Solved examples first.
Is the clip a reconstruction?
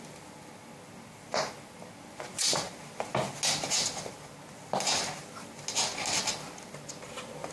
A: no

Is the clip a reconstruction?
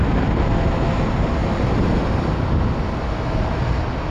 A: no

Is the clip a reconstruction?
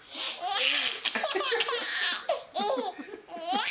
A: no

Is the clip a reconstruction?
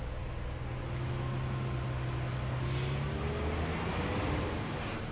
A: no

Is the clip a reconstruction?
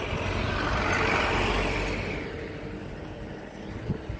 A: no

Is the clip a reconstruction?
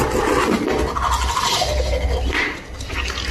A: no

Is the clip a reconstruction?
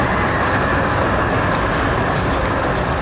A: no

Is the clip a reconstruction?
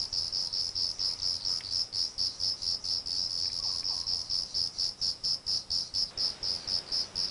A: no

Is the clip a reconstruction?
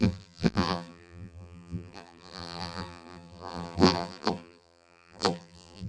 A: yes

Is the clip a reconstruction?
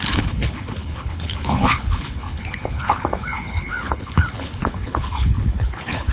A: yes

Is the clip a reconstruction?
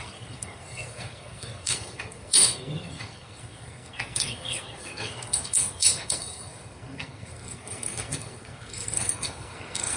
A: yes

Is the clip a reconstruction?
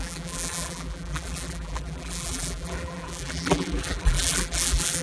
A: yes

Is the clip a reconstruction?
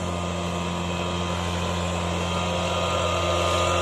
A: no